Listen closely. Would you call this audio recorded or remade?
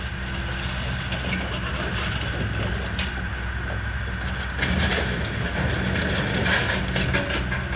recorded